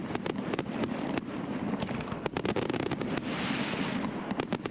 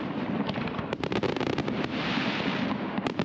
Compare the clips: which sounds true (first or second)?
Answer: first